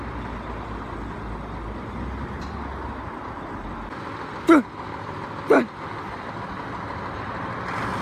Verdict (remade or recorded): recorded